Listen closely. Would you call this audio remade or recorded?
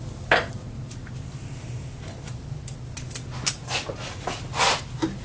recorded